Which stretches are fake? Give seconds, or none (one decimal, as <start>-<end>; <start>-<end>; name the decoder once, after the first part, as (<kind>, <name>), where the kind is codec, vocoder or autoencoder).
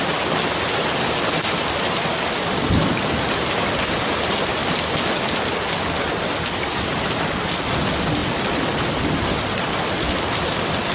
none